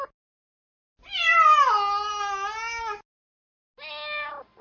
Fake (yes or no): no